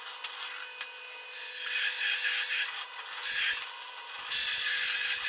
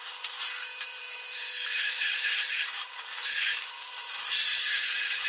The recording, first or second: first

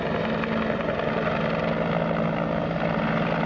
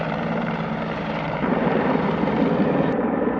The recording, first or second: first